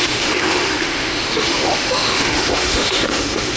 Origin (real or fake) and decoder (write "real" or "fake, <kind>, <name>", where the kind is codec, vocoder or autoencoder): fake, autoencoder, DAC-VAE